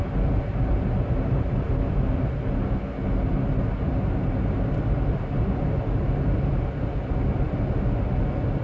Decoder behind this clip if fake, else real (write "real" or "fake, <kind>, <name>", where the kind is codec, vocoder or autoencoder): real